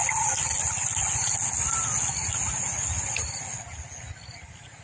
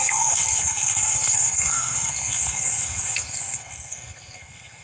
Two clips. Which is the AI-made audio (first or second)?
second